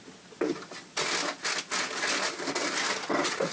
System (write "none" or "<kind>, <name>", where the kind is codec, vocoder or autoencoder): none